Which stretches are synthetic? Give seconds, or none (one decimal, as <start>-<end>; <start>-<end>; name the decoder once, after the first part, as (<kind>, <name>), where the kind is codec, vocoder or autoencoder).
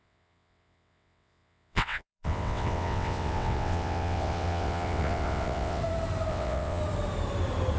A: 0.0-5.8 (vocoder, WaveNeXt); 6.3-6.8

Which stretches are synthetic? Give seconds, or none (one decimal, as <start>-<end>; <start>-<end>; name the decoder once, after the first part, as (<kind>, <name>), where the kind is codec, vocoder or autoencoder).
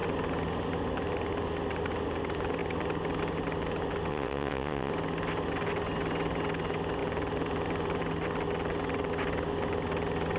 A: 4.1-4.9 (vocoder, WaveNeXt)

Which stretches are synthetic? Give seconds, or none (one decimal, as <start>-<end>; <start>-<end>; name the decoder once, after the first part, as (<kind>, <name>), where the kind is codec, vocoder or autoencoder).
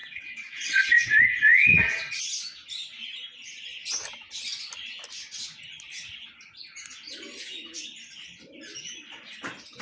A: 0.0-2.2 (vocoder, WaveNeXt)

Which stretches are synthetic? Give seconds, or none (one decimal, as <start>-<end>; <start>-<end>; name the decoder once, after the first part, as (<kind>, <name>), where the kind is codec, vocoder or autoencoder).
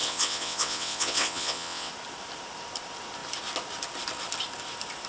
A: 0.0-1.9 (vocoder, WaveNeXt)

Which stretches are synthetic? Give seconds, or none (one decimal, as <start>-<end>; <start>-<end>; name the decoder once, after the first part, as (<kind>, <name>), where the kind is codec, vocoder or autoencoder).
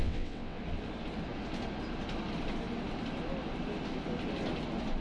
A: 0.0-0.6 (vocoder, WaveNeXt)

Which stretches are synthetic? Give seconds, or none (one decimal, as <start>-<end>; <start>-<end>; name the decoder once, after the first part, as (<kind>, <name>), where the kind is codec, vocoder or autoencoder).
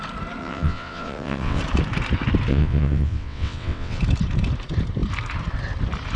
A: 0.4-1.6 (vocoder, WaveNeXt); 2.5-4.0